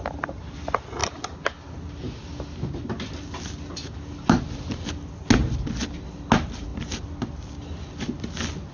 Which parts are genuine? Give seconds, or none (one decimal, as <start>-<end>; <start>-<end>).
0.0-8.7